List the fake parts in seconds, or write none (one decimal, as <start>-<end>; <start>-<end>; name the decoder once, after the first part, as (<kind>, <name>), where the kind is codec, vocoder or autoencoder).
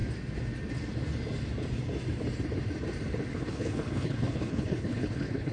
3.3-5.5 (codec, HILCodec)